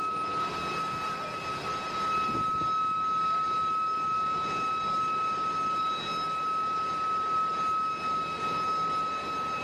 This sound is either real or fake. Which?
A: real